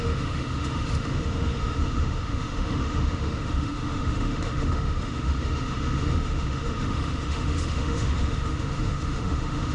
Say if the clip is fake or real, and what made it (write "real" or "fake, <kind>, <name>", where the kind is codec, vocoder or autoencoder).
fake, autoencoder, DAC-VAE